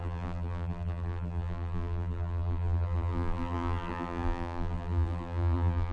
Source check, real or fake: fake